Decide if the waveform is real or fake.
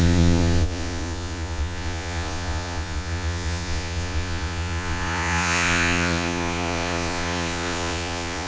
fake